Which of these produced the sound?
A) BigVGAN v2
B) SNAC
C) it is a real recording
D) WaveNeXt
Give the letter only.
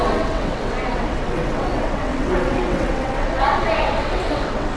D